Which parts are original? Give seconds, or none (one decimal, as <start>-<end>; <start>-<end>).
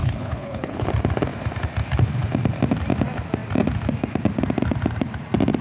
0.9-5.6